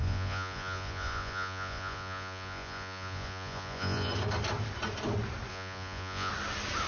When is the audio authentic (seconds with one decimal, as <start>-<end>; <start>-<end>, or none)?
4.1-5.5; 6.3-6.9